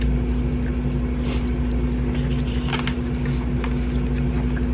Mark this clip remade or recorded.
recorded